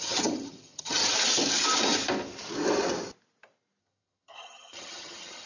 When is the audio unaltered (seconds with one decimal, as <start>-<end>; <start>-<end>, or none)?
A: 1.0-3.8